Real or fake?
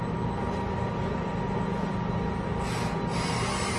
real